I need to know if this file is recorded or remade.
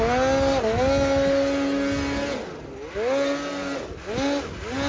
recorded